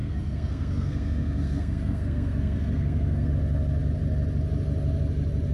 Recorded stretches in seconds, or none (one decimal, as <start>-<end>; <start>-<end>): 3.3-5.5